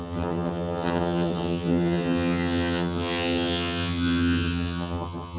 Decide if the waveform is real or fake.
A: fake